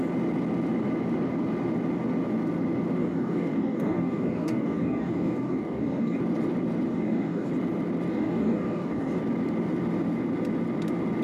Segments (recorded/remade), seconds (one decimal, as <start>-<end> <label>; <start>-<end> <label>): 0.0-3.0 recorded; 3.0-6.2 remade; 6.2-6.9 recorded; 6.9-7.5 remade; 7.5-8.1 recorded; 8.1-9.2 remade; 9.2-11.2 recorded